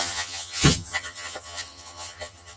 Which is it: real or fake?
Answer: fake